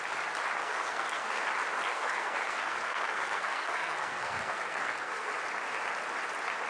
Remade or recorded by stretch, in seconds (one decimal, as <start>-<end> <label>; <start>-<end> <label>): 0.0-0.6 recorded; 0.6-1.4 remade; 1.4-1.9 recorded; 1.9-5.3 remade; 5.3-6.7 recorded